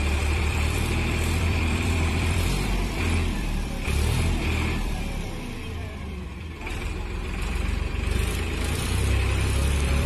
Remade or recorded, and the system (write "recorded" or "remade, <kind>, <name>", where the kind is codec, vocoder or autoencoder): remade, vocoder, BigVGAN v2